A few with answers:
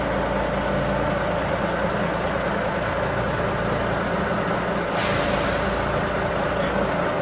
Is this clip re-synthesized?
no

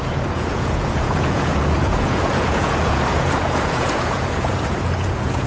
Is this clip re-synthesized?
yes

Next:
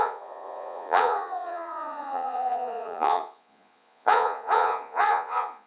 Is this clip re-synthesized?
yes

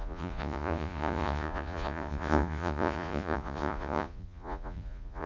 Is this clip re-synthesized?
yes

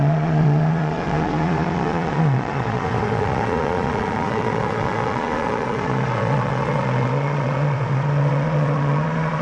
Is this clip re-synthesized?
yes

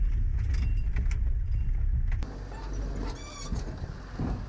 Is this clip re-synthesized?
no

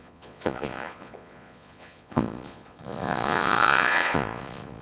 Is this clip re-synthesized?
yes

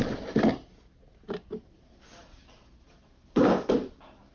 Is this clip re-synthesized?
no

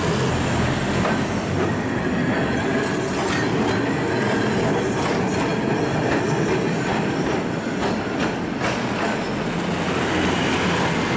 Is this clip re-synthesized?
no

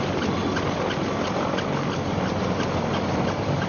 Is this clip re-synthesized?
no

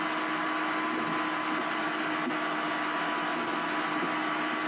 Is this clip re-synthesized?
no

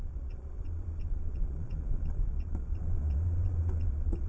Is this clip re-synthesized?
yes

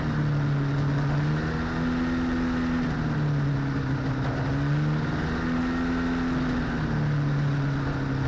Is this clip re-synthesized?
no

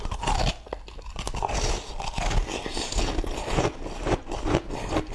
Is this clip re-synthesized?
no